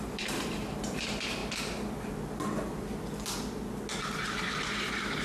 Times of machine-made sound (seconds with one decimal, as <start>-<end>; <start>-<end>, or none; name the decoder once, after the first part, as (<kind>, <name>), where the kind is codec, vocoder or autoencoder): 0.0-1.4 (vocoder, BigVGAN v2); 4.0-5.2